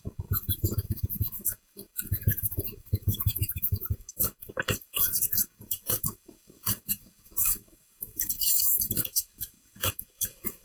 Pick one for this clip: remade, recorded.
remade